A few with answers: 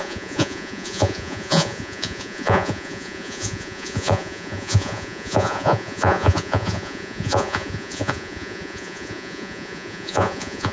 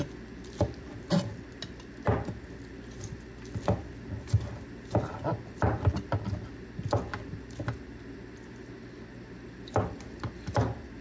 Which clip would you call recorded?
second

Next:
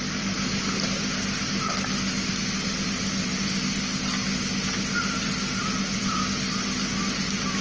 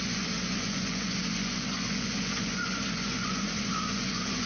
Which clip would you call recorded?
first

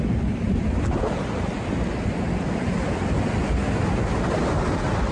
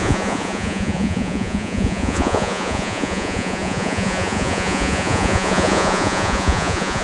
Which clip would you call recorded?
first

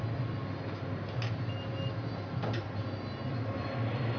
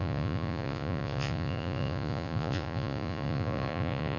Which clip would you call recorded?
first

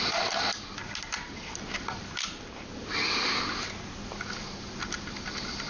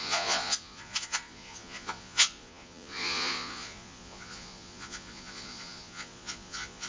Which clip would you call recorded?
first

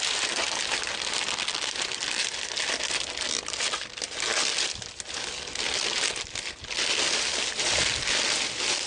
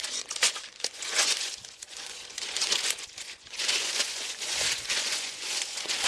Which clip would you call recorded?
first